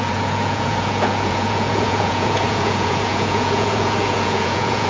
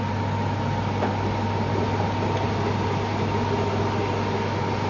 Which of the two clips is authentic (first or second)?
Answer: second